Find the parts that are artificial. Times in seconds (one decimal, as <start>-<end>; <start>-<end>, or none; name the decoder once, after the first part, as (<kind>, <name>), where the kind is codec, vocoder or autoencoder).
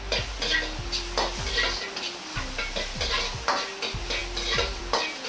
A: none